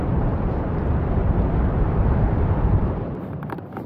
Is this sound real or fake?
fake